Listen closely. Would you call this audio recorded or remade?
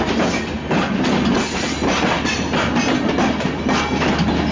recorded